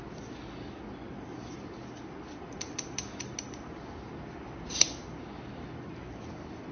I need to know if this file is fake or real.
real